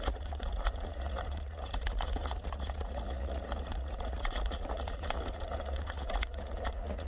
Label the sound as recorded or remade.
remade